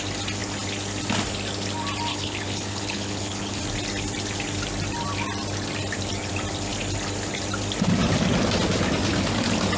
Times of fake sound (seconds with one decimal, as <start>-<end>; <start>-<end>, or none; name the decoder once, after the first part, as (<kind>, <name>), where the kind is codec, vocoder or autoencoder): 2.1-3.6 (codec, HILCodec)